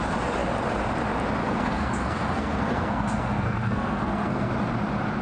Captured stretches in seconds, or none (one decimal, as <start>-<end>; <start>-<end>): 0.0-1.4; 4.5-5.2